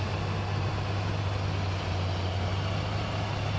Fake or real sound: real